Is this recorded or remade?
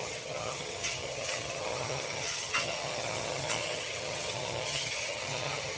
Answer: remade